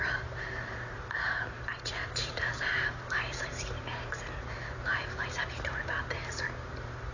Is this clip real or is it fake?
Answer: fake